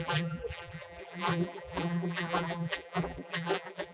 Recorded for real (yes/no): no